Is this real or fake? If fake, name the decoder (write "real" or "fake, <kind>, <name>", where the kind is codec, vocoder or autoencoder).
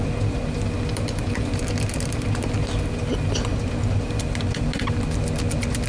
real